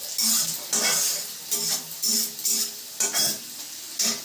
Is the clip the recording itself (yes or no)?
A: yes